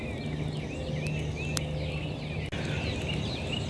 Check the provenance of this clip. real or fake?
real